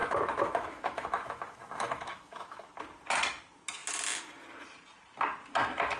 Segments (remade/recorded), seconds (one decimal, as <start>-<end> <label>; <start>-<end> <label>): 0.0-2.7 remade; 2.7-6.0 recorded